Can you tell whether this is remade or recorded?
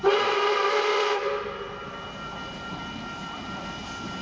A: remade